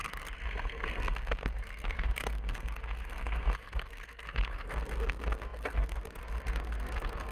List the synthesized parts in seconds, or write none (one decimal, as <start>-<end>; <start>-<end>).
0.0-7.3